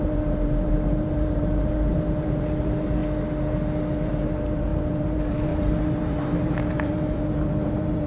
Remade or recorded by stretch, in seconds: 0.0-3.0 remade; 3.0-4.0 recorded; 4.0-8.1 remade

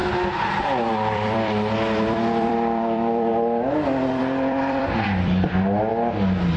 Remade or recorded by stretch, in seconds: 0.0-0.9 recorded; 0.9-3.3 remade; 3.3-4.2 recorded; 4.2-5.9 remade; 5.9-6.6 recorded

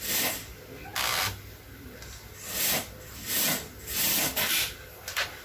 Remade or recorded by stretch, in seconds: 0.0-5.4 recorded

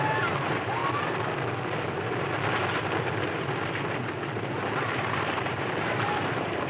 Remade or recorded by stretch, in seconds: 0.0-0.8 remade; 0.8-4.8 recorded; 4.8-6.7 remade

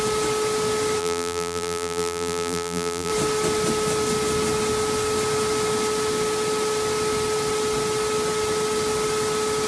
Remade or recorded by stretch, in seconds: 0.0-1.0 recorded; 1.0-3.1 remade; 3.1-9.7 recorded

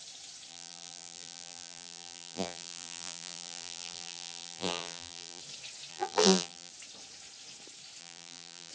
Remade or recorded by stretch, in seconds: 0.0-0.5 recorded; 0.5-5.4 remade; 5.4-5.9 recorded; 5.9-6.7 remade; 6.7-8.0 recorded; 8.0-8.7 remade